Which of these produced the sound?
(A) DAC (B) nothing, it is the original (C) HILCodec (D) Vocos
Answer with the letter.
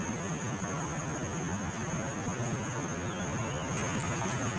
B